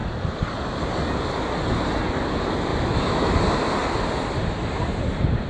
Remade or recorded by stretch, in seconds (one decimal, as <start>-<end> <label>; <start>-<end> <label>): 0.0-2.7 recorded; 2.7-3.3 remade; 3.3-5.5 recorded